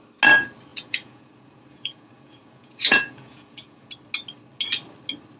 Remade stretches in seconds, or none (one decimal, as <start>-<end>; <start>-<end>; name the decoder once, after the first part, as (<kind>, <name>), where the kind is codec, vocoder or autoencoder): 0.7-3.9 (vocoder, Vocos)